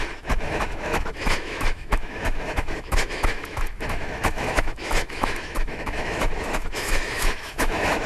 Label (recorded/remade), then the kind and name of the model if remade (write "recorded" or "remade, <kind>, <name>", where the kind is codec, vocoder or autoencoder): remade, autoencoder, DAC-VAE